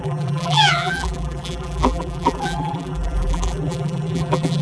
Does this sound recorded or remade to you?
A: remade